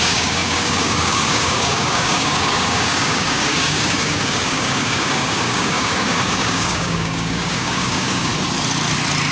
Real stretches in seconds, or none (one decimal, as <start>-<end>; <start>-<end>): 8.3-9.3